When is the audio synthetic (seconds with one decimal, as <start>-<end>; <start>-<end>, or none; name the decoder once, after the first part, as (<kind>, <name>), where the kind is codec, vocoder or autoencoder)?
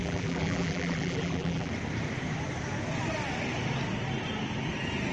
0.0-1.7 (vocoder, BigVGAN v2)